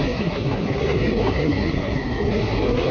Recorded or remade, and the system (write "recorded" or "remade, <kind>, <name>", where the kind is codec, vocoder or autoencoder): remade, codec, SNAC